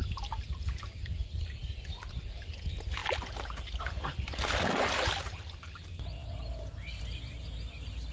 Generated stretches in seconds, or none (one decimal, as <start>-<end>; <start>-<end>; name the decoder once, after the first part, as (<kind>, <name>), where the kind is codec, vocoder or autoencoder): none